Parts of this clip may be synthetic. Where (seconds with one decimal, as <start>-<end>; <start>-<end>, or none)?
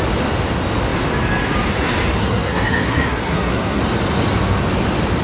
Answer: 2.2-3.8